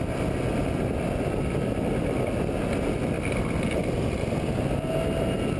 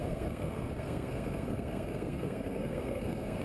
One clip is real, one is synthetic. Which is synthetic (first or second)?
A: second